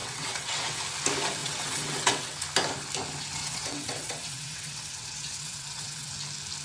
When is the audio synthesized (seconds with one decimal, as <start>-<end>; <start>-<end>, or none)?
0.0-0.8; 1.4-2.4; 3.4-6.1